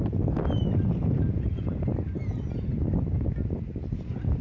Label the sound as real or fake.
real